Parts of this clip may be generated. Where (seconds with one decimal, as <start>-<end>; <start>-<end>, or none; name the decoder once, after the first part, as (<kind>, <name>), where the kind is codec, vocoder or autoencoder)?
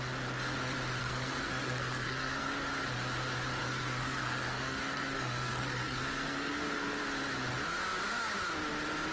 1.0-2.5 (codec, SNAC); 3.6-7.0